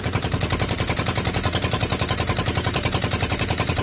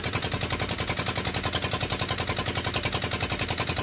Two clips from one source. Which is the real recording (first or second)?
second